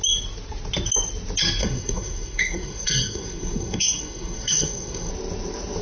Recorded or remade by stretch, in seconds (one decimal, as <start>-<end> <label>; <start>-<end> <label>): 0.0-1.6 recorded; 1.6-5.1 remade; 5.1-5.8 recorded